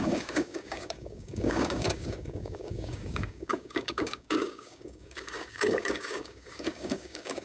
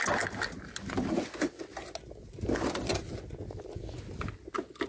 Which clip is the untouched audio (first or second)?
second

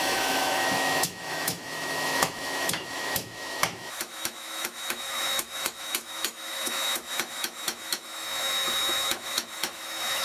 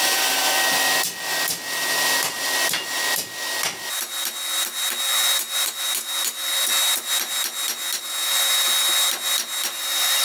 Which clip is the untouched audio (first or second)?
second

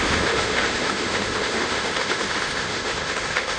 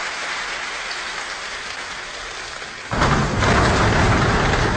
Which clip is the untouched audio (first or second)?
second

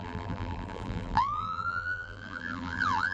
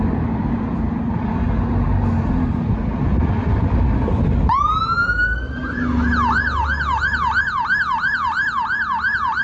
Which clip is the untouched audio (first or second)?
second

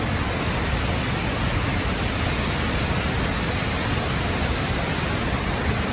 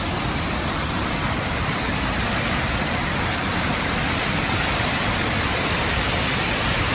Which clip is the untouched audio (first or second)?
first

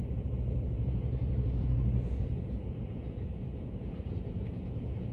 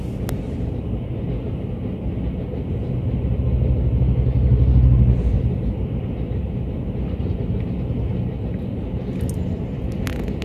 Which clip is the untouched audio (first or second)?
second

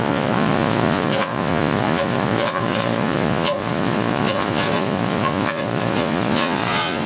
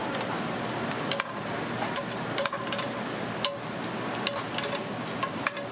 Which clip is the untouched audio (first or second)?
second